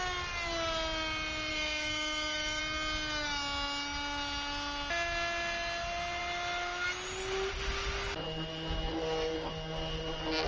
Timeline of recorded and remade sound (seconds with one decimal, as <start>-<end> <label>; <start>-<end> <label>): 0.0-1.5 recorded; 1.5-2.6 remade; 2.6-10.5 recorded